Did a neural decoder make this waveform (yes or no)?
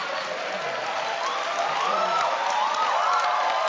no